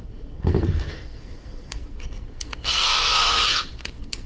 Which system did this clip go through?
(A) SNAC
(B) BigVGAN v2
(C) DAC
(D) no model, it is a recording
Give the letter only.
A